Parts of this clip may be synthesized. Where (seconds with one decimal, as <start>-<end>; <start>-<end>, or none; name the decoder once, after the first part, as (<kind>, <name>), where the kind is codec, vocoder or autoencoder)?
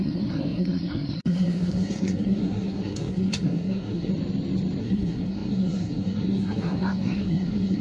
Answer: 0.0-4.1 (codec, SNAC); 4.8-7.8